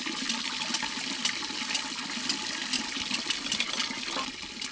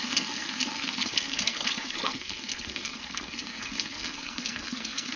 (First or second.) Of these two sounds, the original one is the first